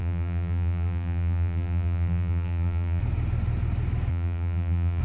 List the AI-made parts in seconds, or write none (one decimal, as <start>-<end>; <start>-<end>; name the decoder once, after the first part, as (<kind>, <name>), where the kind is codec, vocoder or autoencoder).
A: 0.0-3.0 (vocoder, BigVGAN v2); 4.1-5.0

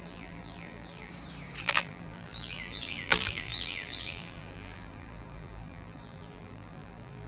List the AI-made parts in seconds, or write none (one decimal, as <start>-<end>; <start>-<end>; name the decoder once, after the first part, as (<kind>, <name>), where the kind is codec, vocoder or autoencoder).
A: 0.0-1.1 (vocoder, BigVGAN v2); 1.6-7.3

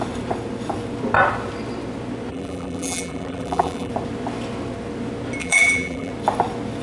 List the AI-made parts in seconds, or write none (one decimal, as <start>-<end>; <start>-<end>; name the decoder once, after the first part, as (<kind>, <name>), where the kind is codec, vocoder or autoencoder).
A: 2.3-3.9 (vocoder, BigVGAN v2); 5.4-6.1